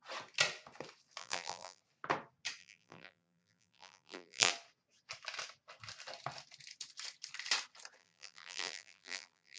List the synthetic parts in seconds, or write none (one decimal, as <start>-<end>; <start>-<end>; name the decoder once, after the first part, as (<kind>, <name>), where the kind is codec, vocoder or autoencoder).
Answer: 1.2-1.8 (vocoder, BigVGAN v2); 2.6-4.5; 8.0-9.6